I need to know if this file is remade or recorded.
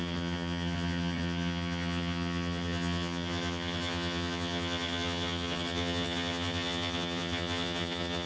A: remade